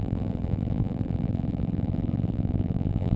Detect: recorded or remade remade